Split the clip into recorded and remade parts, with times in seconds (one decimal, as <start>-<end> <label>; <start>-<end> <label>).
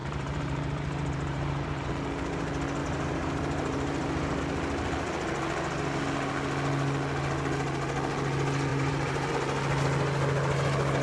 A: 0.0-1.9 remade; 1.9-2.8 recorded; 2.8-4.4 remade; 4.4-8.7 recorded; 8.7-9.3 remade; 9.3-11.0 recorded